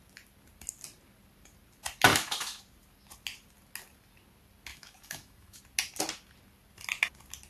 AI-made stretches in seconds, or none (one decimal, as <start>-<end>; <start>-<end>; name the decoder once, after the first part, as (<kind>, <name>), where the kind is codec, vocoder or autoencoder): 2.1-2.6 (autoencoder, DAC-VAE); 4.7-5.6